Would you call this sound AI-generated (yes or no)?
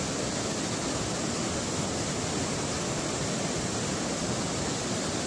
no